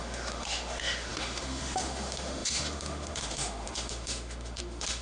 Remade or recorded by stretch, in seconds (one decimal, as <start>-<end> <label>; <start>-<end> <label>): 0.0-5.0 remade

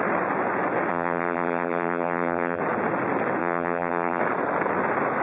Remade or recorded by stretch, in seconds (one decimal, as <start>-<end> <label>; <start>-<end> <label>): 0.0-0.9 recorded; 0.9-2.6 remade; 2.6-3.4 recorded; 3.4-4.2 remade; 4.2-5.2 recorded

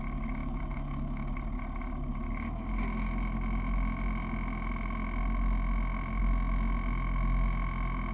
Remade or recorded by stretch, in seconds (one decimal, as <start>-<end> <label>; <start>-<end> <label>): 0.0-0.4 recorded; 0.4-1.3 remade; 1.3-8.1 recorded

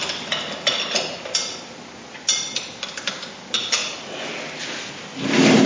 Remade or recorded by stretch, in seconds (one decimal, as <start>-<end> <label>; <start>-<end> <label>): 0.0-5.7 recorded

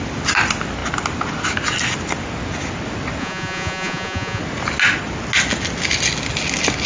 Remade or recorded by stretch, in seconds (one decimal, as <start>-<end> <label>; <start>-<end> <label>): 0.0-3.2 recorded; 3.2-4.4 remade; 4.4-6.9 recorded

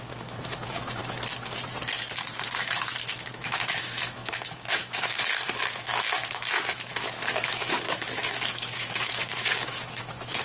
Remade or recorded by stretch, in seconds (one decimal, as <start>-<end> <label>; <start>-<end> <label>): 0.0-1.0 remade; 1.0-2.6 recorded; 2.6-10.4 remade

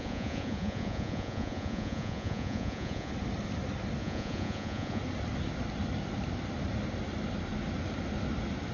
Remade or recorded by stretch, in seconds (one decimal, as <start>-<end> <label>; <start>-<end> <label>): 0.0-3.1 remade; 3.1-4.0 recorded; 4.0-5.0 remade; 5.0-8.7 recorded

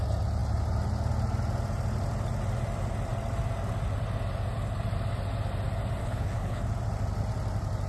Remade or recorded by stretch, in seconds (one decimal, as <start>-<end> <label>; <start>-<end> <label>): 0.0-6.0 recorded; 6.0-6.6 remade; 6.6-7.9 recorded